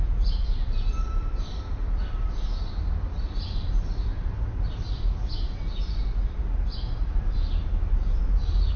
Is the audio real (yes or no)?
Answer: no